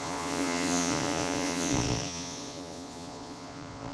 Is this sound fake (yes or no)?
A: yes